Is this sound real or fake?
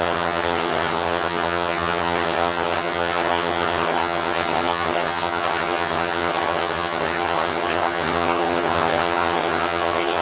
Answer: fake